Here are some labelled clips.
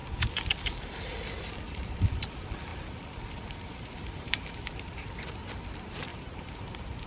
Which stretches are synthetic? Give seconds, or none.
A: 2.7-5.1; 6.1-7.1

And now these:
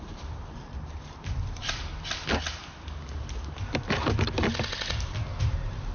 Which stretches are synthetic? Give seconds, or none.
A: 0.0-1.9; 5.4-5.9

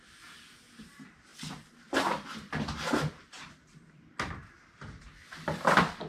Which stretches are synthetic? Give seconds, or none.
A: none

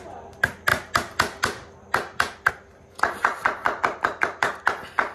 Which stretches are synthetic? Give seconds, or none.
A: none

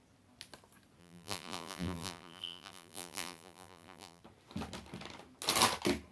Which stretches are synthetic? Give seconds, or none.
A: 1.0-4.2

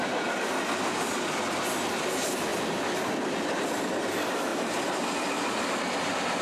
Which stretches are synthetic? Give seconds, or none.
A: none

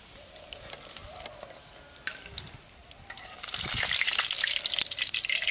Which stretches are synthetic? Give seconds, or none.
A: 2.8-4.1